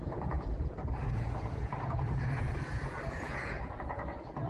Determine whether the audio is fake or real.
fake